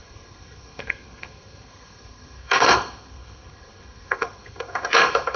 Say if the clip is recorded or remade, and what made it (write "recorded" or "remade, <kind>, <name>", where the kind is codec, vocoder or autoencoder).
remade, codec, SNAC